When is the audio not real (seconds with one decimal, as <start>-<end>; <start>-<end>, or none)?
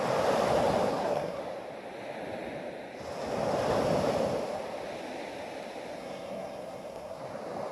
0.9-1.4; 6.0-7.2